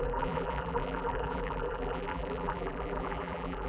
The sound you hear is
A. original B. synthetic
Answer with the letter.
B